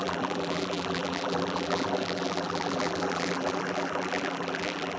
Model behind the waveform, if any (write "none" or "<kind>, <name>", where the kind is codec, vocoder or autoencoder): vocoder, BigVGAN v2